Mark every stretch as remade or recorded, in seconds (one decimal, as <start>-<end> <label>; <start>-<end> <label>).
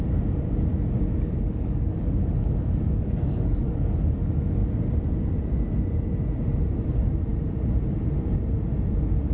0.0-1.1 recorded; 1.1-4.0 remade; 4.0-9.3 recorded